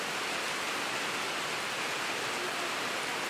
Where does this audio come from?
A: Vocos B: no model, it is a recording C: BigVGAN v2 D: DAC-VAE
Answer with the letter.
B